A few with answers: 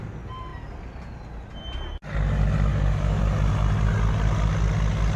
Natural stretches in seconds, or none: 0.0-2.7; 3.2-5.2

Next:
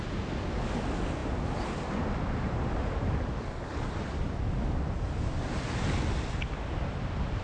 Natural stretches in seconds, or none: 0.0-7.4